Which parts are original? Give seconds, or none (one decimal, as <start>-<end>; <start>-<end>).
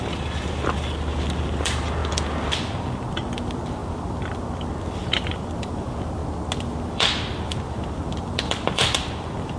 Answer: 6.2-6.8